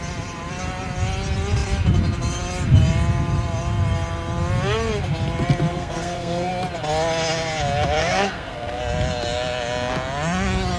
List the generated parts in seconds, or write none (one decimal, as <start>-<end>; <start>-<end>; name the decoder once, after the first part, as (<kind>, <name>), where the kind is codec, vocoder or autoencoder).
5.7-6.5 (codec, SNAC); 8.0-8.8

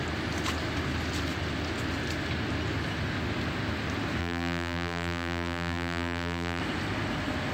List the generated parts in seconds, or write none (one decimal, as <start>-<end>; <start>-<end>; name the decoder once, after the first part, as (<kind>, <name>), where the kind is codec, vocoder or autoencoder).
4.2-6.6 (vocoder, BigVGAN v2)

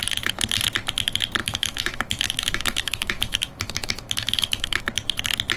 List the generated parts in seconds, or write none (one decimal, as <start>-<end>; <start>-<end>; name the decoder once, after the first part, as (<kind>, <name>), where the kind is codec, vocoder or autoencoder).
1.4-4.8 (autoencoder, DAC-VAE)

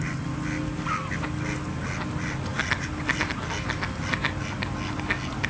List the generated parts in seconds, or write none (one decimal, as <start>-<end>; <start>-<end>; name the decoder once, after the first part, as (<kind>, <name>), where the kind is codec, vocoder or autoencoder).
none

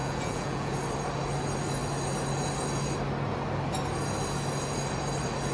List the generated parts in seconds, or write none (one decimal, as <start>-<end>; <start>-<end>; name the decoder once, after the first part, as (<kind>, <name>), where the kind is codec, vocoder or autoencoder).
0.0-0.7 (vocoder, Vocos)

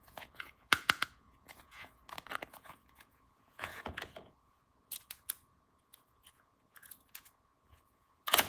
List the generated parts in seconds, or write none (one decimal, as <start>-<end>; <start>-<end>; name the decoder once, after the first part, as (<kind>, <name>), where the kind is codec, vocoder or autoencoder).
0.0-2.0 (vocoder, Vocos); 2.5-8.5